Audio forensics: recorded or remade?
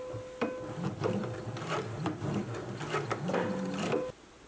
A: recorded